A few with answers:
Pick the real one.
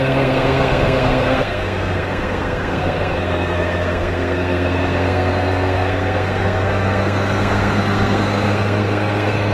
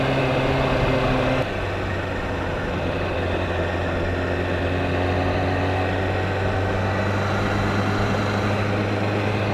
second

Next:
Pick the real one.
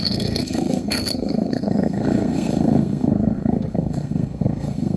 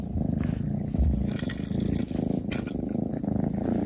second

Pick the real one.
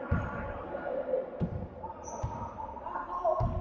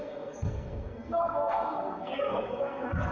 first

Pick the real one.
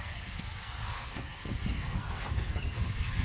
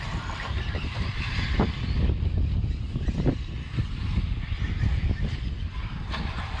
second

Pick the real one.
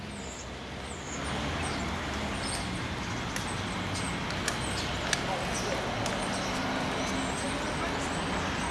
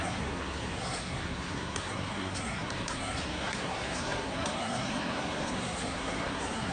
first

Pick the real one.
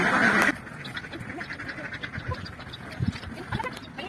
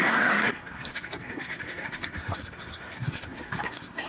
first